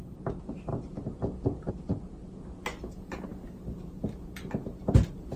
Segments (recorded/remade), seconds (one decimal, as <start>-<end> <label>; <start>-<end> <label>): 0.0-5.4 recorded